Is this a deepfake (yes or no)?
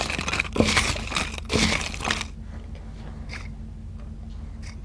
no